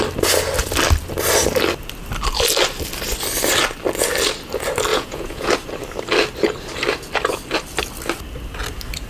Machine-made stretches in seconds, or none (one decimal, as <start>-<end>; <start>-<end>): 4.9-5.5